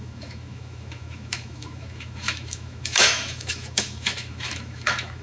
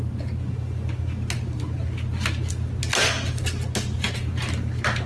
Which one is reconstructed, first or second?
first